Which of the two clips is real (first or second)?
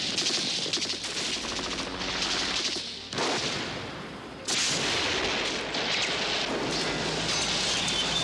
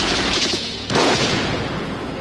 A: first